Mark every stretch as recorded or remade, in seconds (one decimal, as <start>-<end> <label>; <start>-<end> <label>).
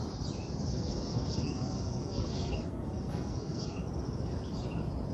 0.0-0.7 recorded; 0.7-3.8 remade; 3.8-5.1 recorded